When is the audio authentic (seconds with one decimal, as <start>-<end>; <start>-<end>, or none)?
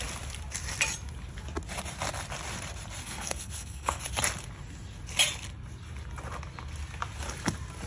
0.0-3.0; 4.0-7.9